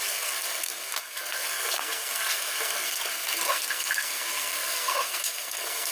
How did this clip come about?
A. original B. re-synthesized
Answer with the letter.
B